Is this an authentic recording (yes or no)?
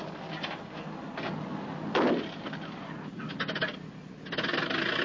yes